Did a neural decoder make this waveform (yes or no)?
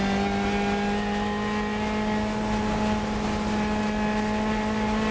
no